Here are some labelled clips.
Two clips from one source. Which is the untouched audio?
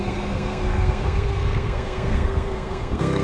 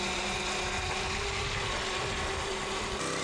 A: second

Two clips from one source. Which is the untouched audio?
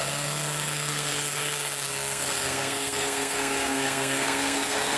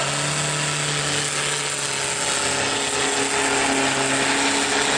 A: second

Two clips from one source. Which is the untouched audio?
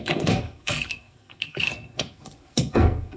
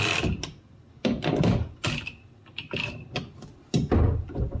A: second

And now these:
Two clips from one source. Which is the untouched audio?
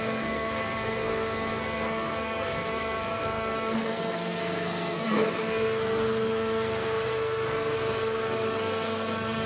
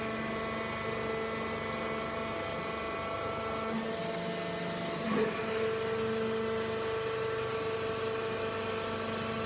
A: second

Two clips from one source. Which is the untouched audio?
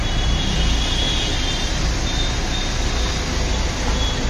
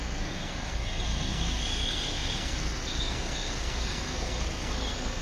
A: first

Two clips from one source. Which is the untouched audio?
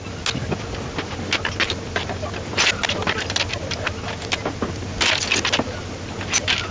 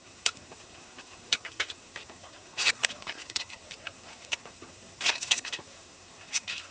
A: first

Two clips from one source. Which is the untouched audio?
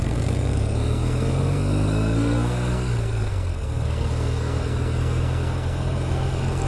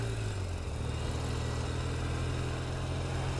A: second